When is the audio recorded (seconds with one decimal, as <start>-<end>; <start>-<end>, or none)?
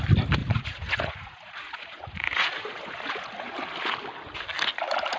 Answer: 0.0-0.4; 3.5-5.2